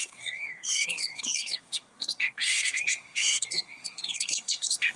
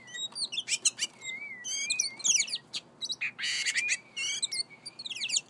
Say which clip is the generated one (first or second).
first